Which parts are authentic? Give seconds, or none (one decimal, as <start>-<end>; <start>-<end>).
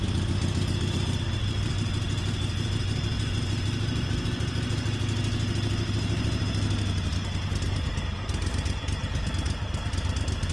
0.0-10.5